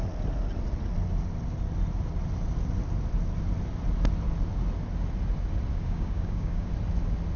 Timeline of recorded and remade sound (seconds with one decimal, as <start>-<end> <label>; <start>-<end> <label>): 0.0-5.7 recorded; 5.7-6.7 remade; 6.7-7.4 recorded